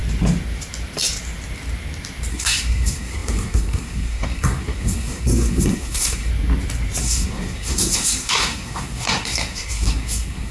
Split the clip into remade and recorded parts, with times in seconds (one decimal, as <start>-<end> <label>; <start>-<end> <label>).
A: 0.0-2.3 recorded; 2.3-6.3 remade; 6.3-7.0 recorded; 7.0-10.5 remade